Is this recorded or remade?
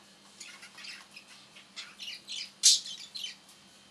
recorded